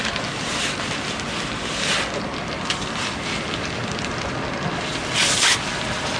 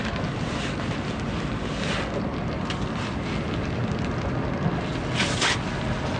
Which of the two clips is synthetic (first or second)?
first